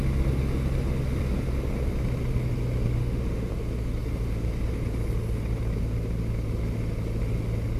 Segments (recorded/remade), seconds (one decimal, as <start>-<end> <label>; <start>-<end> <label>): 0.0-3.0 recorded; 3.0-3.5 remade; 3.5-7.8 recorded